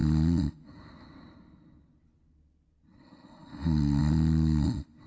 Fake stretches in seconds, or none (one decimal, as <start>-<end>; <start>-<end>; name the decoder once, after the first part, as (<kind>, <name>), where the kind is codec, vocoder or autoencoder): none